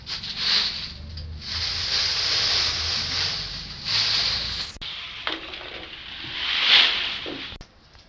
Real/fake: real